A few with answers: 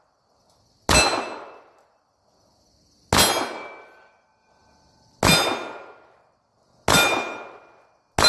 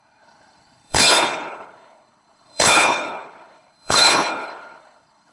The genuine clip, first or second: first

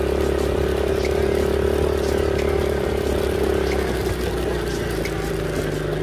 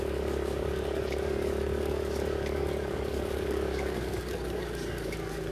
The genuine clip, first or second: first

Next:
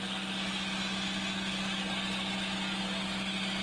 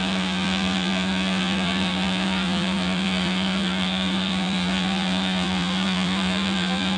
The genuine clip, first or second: first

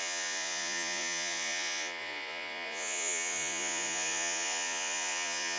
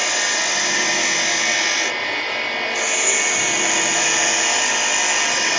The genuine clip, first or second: second